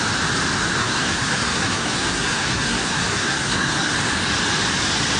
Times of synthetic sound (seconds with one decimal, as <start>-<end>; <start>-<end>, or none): 0.8-3.9